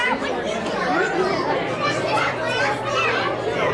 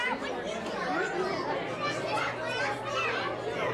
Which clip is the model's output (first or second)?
first